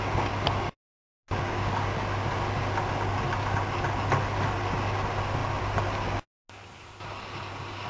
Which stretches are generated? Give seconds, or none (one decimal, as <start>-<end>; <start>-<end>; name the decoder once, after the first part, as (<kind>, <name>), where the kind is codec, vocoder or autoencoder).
none